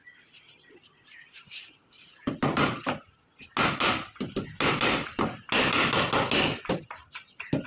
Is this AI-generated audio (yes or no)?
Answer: no